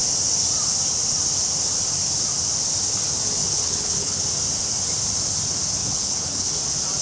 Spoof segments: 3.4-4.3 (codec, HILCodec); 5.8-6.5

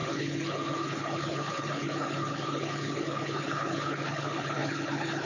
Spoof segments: 0.0-5.3 (codec, HILCodec)

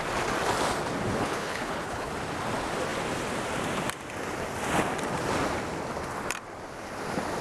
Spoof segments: 1.2-2.1 (codec, HILCodec)